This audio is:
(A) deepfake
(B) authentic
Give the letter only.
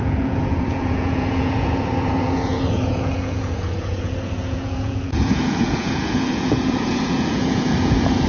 A